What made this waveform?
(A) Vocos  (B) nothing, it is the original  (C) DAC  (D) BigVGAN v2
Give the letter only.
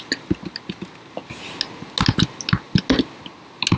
B